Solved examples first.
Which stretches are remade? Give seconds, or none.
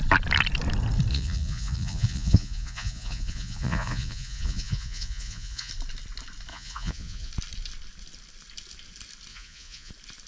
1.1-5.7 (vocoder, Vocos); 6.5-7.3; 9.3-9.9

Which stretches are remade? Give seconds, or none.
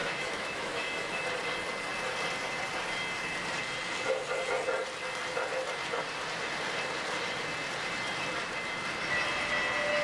0.0-1.2 (autoencoder, DAC-VAE)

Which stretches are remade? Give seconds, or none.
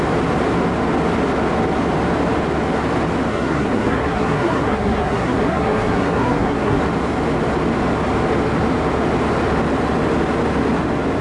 3.3-6.8 (codec, SNAC)